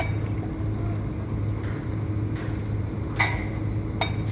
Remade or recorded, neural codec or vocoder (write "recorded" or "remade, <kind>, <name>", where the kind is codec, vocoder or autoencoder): recorded